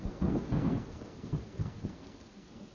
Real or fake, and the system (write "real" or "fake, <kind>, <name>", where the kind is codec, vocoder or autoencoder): fake, codec, SNAC